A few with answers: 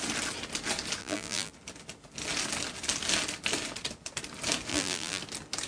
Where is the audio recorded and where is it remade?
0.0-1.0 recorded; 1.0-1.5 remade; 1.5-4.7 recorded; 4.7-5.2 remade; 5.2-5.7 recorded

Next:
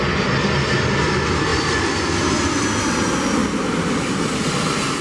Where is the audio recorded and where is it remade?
0.0-5.0 recorded

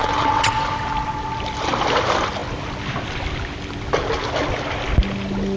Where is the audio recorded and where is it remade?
0.0-0.5 remade; 0.5-5.6 recorded

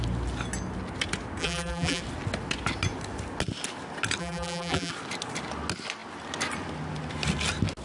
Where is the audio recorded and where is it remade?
0.0-1.4 recorded; 1.4-2.0 remade; 2.0-4.2 recorded; 4.2-4.9 remade; 4.9-7.8 recorded

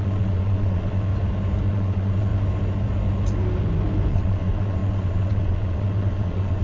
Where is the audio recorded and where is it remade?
0.0-1.1 remade; 1.1-1.7 recorded; 1.7-2.3 remade; 2.3-4.1 recorded; 4.1-6.6 remade